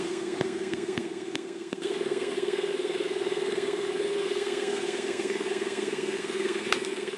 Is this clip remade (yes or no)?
yes